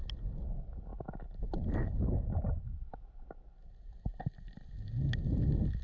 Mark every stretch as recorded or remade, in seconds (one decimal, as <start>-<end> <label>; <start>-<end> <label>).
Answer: 0.0-5.8 recorded